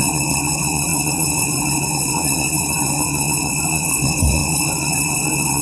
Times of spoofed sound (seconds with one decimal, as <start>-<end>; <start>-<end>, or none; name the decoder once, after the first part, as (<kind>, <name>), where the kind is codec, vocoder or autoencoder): 0.0-5.6 (vocoder, WaveNeXt)

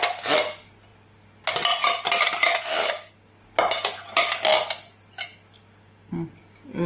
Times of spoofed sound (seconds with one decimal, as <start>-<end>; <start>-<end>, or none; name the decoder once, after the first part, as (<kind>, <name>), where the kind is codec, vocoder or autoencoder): none

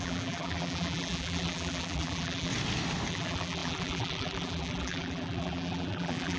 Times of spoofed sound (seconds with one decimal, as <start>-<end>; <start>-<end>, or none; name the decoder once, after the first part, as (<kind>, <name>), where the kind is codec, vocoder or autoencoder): 0.0-2.5 (vocoder, BigVGAN v2); 3.1-6.4